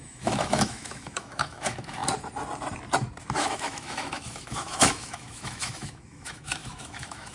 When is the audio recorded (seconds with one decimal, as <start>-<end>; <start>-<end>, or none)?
2.0-3.4